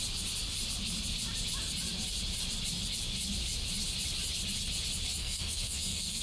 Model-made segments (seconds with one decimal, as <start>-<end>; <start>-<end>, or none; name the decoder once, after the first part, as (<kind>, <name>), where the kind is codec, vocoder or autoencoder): 5.2-6.2 (codec, SNAC)